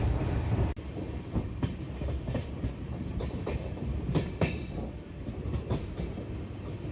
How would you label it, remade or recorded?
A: recorded